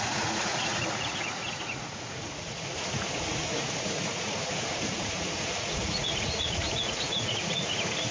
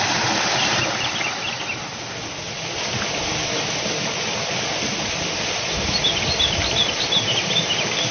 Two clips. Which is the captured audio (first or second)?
second